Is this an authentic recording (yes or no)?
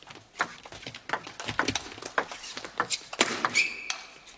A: yes